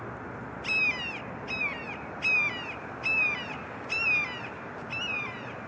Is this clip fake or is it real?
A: real